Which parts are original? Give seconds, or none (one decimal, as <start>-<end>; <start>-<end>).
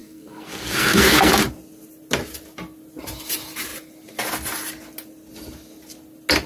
1.3-6.5